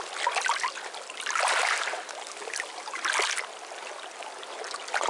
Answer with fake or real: real